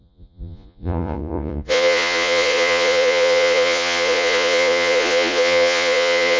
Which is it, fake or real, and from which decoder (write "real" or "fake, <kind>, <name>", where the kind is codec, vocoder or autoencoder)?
fake, vocoder, Vocos